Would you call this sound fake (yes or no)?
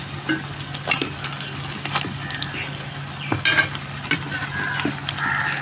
no